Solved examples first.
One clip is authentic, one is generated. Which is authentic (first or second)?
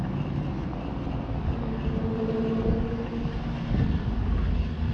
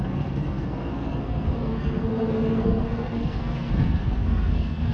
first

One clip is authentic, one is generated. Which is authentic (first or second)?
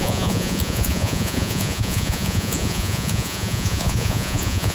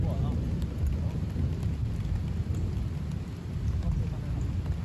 second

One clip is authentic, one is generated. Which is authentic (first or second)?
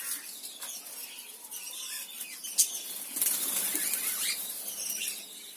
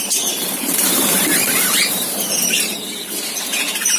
first